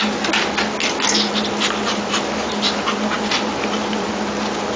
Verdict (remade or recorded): recorded